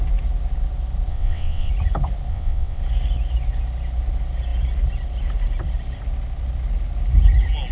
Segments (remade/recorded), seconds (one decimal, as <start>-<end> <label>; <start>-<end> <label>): 0.0-1.1 recorded; 1.1-1.7 remade; 1.7-2.3 recorded; 2.3-2.8 remade; 2.8-7.7 recorded